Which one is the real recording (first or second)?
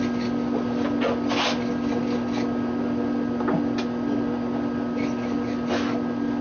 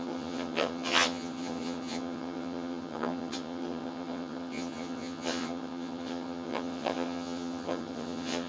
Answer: first